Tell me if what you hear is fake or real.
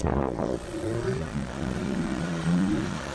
fake